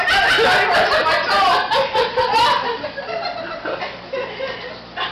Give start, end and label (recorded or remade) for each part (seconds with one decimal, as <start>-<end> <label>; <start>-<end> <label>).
0.0-1.0 recorded; 1.0-4.1 remade; 4.1-5.1 recorded